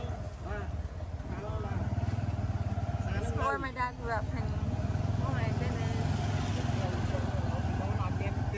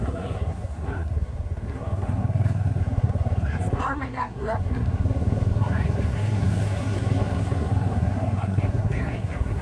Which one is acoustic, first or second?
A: first